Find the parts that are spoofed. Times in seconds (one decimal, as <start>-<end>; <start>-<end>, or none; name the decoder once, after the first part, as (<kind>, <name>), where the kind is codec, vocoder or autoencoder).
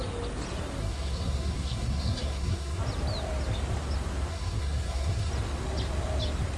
0.8-2.8 (codec, SNAC); 4.3-5.3